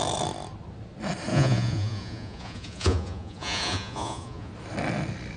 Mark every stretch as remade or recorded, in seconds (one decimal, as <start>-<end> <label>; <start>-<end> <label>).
0.0-1.3 recorded; 1.3-4.5 remade; 4.5-5.4 recorded